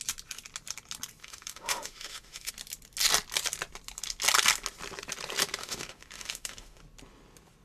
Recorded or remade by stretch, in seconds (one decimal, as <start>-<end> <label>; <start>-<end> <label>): 0.0-1.2 recorded; 1.2-2.5 remade; 2.5-5.6 recorded; 5.6-6.8 remade; 6.8-7.6 recorded